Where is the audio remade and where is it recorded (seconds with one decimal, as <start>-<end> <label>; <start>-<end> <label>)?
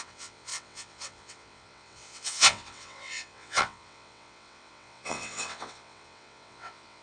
0.0-7.0 remade